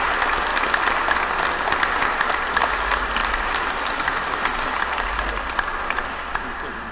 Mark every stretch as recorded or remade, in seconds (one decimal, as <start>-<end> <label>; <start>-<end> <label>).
0.0-3.2 recorded; 3.2-6.0 remade; 6.0-6.9 recorded